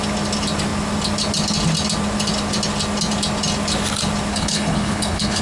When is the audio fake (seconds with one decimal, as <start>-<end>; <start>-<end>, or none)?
4.3-5.4